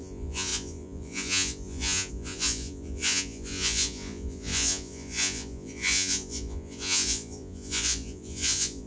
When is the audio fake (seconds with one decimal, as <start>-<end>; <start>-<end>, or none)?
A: 0.0-8.9